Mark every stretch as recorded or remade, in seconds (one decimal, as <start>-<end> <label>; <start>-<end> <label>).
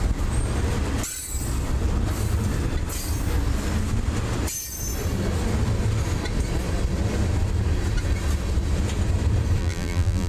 0.0-9.6 recorded; 9.6-10.3 remade